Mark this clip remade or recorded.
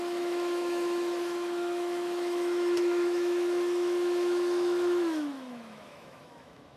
remade